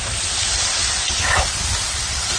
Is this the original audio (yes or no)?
yes